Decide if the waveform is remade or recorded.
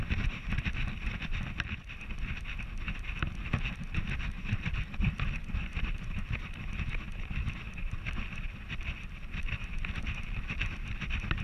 recorded